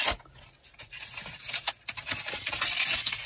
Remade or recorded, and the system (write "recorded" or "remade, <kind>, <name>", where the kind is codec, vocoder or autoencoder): recorded